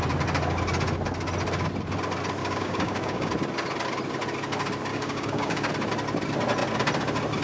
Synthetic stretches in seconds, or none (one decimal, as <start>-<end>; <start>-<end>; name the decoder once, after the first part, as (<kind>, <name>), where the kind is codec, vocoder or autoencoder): 2.4-3.3 (codec, DAC); 4.9-5.7